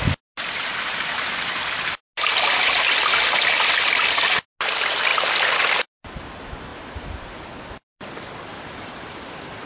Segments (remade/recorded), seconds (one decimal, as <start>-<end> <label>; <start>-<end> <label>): 0.0-6.7 recorded; 6.7-7.5 remade; 7.5-8.5 recorded; 8.5-9.7 remade